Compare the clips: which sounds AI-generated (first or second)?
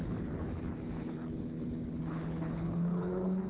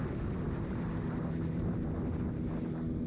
first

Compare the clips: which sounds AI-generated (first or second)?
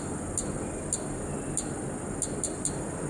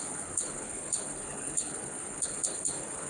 second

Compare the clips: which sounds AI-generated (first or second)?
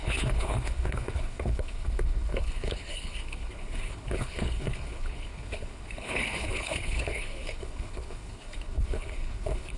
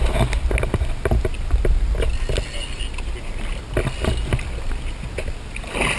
first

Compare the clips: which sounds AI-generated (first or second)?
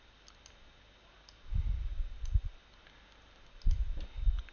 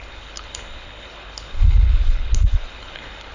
second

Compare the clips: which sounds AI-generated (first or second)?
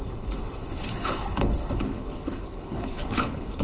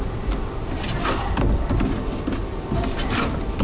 first